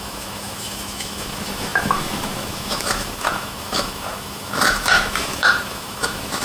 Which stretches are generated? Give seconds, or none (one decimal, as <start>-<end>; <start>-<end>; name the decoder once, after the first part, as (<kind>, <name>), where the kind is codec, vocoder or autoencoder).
0.0-6.4 (autoencoder, DAC-VAE)